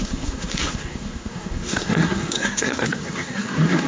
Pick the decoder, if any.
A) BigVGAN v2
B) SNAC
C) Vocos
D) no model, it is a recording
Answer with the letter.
B